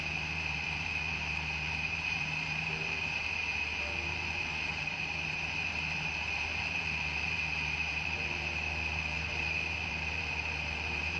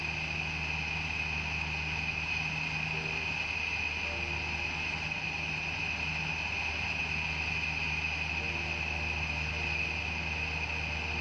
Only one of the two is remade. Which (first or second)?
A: first